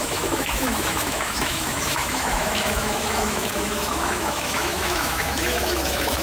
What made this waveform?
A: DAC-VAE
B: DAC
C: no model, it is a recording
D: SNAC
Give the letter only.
A